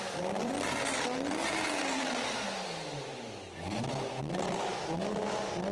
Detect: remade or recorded recorded